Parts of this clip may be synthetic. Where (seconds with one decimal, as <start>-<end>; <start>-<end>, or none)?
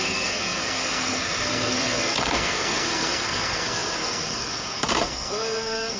0.0-6.0